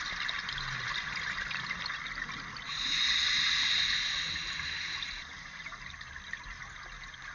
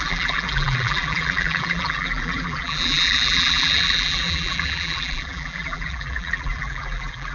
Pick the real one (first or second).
first